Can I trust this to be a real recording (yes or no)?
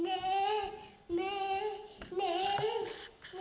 yes